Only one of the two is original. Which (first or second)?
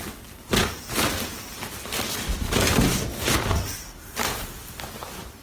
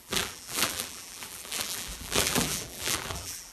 first